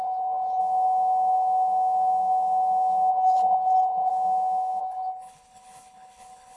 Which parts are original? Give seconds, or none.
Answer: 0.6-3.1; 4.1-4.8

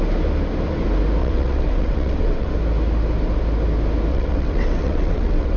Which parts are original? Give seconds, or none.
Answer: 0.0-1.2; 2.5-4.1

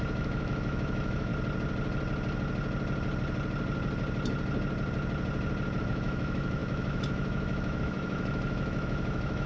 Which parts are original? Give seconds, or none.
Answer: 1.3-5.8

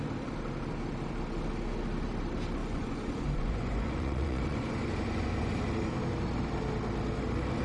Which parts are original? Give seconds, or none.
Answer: 0.0-2.6; 5.6-7.6

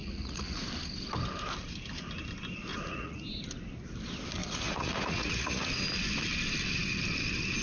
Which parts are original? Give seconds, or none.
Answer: 0.6-2.7; 3.2-4.4; 5.7-7.6

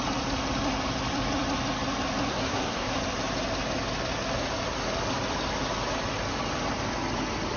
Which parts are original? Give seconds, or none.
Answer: 0.0-2.3; 2.9-7.6

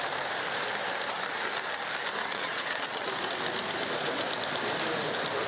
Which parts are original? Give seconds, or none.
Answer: 0.0-2.3; 3.1-5.5

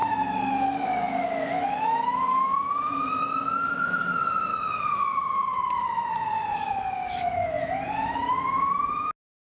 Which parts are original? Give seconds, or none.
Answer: 4.0-4.5; 8.3-9.6